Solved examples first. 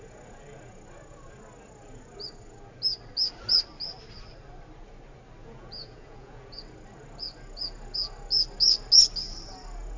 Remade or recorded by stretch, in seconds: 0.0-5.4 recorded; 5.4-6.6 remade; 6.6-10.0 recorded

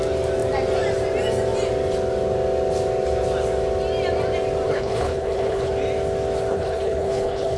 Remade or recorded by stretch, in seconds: 0.0-4.7 recorded; 4.7-5.7 remade; 5.7-6.5 recorded; 6.5-7.6 remade

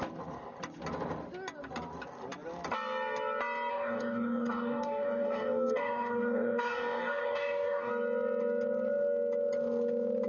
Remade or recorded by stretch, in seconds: 0.0-3.7 recorded; 3.7-7.9 remade; 7.9-10.3 recorded

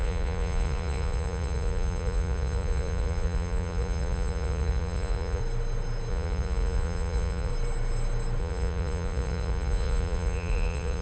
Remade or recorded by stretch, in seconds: 0.0-5.4 remade; 5.4-6.1 recorded; 6.1-7.5 remade; 7.5-8.4 recorded; 8.4-11.0 remade

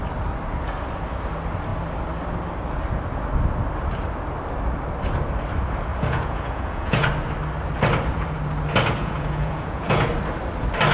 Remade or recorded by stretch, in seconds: 0.0-5.9 recorded; 5.9-7.1 remade; 7.1-9.0 recorded; 9.0-10.1 remade; 10.1-10.9 recorded